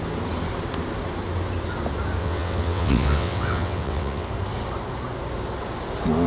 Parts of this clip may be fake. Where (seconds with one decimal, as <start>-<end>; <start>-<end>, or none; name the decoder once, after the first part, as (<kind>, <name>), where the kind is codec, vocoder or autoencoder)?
2.2-4.3 (vocoder, WaveNeXt)